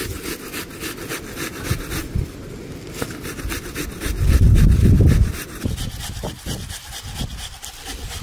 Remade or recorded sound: recorded